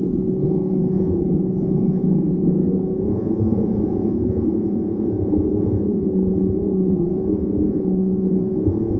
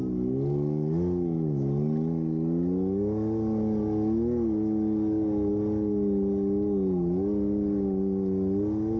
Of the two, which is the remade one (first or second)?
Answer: first